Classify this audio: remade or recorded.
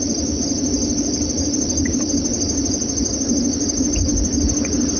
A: recorded